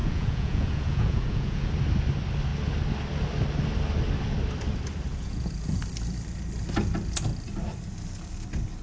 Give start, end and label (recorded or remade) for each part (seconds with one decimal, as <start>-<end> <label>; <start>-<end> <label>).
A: 0.0-1.7 remade; 1.7-5.1 recorded; 5.1-5.8 remade; 5.8-8.8 recorded